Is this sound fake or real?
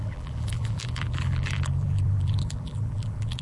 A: fake